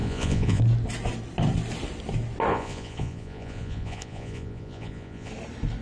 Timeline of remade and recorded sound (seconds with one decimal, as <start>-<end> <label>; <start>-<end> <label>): 0.0-0.6 remade; 0.6-2.5 recorded; 2.5-5.3 remade; 5.3-5.8 recorded